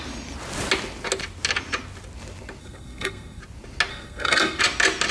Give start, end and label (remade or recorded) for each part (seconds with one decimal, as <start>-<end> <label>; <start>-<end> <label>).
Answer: 0.0-2.6 recorded; 2.6-3.4 remade; 3.4-3.9 recorded; 3.9-4.6 remade; 4.6-5.1 recorded